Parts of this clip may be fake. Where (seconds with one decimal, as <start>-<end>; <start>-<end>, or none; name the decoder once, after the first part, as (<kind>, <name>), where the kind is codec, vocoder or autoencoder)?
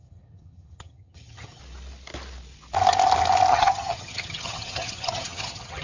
0.0-1.6 (vocoder, HiFi-GAN); 3.5-5.8